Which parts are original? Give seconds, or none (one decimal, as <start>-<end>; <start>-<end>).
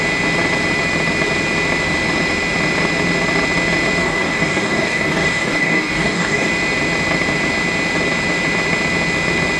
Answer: 0.0-4.0; 6.5-9.6